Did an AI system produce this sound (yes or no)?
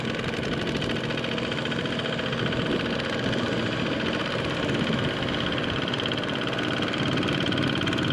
no